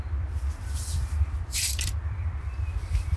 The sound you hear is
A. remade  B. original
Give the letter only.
A